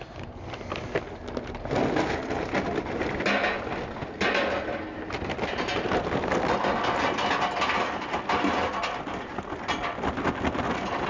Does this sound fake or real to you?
real